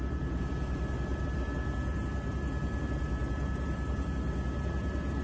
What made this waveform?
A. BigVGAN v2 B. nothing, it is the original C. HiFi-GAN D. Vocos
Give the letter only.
B